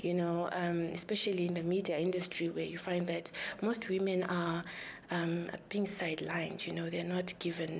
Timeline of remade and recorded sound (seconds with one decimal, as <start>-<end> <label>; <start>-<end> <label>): 0.0-4.7 remade; 4.7-7.8 recorded